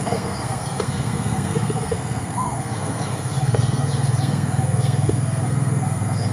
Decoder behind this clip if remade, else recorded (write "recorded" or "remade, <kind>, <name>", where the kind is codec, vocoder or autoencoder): remade, codec, SNAC